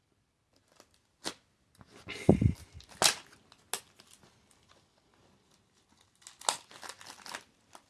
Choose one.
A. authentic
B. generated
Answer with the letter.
A